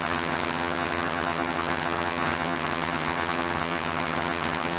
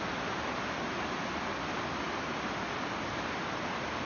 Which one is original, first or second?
second